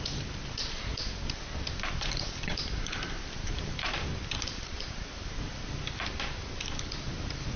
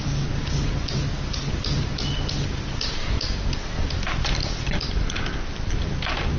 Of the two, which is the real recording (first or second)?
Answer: second